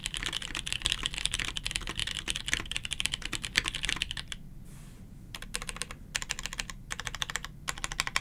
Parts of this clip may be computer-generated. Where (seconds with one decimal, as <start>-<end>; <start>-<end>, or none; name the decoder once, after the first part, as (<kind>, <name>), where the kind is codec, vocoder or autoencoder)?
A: none